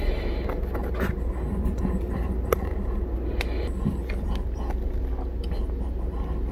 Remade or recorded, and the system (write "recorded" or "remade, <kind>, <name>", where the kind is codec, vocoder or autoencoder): recorded